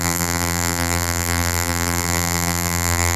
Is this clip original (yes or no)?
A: no